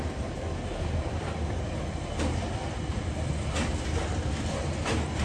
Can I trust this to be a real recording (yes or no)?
yes